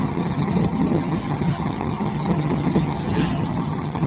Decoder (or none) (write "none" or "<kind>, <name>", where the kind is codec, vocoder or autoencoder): vocoder, HiFi-GAN